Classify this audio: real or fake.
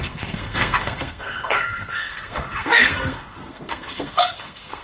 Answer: fake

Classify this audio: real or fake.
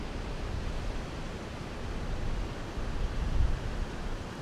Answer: real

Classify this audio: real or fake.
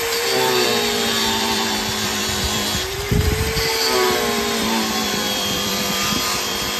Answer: fake